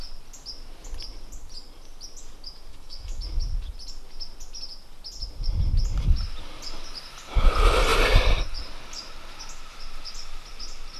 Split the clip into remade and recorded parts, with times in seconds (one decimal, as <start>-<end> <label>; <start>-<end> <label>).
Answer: 0.0-2.7 recorded; 2.7-3.2 remade; 3.2-11.0 recorded